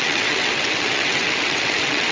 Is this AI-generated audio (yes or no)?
yes